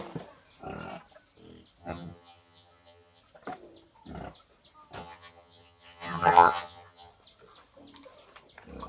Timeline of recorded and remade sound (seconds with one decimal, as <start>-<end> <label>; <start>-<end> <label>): 0.0-1.8 recorded; 1.8-3.2 remade; 3.2-5.0 recorded; 5.0-7.1 remade; 7.1-8.9 recorded